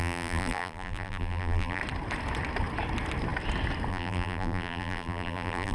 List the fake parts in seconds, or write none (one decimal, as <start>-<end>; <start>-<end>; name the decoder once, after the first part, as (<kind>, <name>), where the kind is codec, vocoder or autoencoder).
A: 0.0-1.8 (vocoder, BigVGAN v2); 3.9-5.7